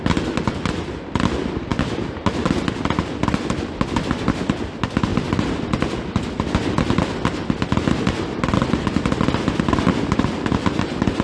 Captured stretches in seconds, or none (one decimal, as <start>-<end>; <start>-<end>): 0.0-11.2